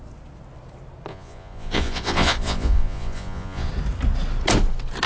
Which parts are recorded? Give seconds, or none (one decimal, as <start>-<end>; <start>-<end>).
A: 0.0-1.1; 3.7-5.1